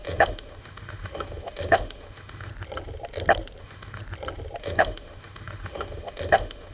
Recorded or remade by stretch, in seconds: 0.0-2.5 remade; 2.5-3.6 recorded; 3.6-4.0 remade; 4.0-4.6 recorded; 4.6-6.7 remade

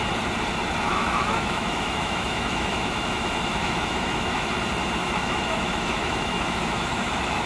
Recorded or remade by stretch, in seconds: 0.0-0.9 recorded; 0.9-4.5 remade; 4.5-5.0 recorded; 5.0-7.5 remade